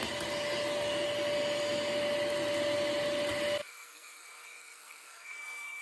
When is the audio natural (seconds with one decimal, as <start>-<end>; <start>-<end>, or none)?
0.0-3.6